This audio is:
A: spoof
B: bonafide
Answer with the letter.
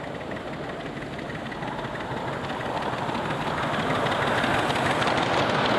B